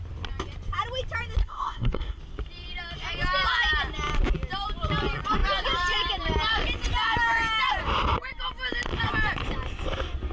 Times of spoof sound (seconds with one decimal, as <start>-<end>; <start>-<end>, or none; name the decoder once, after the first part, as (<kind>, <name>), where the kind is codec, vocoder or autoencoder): 1.4-2.2 (codec, SNAC)